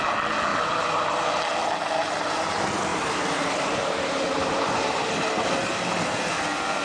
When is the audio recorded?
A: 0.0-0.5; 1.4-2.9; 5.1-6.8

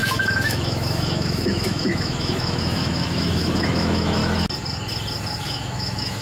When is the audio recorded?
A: 4.2-5.4

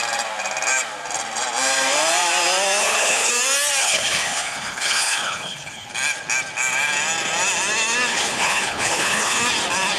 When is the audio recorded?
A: 0.0-2.8; 3.3-3.8; 5.9-8.1; 9.4-10.0

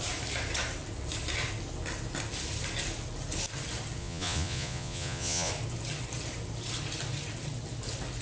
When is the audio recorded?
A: 0.0-4.0; 5.5-8.2

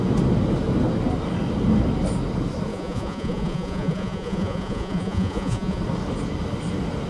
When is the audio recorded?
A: 0.0-2.7; 5.8-7.1

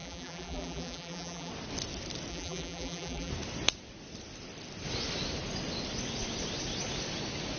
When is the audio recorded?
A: 1.5-2.3; 3.3-7.6

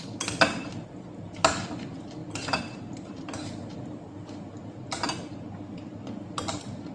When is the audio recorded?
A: 0.0-6.9

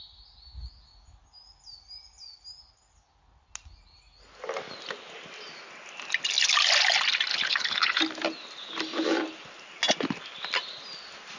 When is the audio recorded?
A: 0.0-7.3; 8.0-11.4